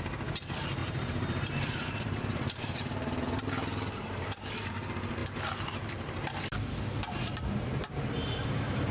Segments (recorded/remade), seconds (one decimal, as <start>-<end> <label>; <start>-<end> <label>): 0.0-0.8 recorded; 0.8-4.7 remade; 4.7-5.2 recorded; 5.2-6.3 remade; 6.3-7.3 recorded; 7.3-8.9 remade